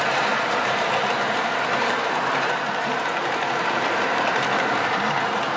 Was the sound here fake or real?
fake